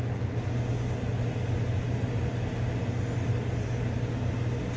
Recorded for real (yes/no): yes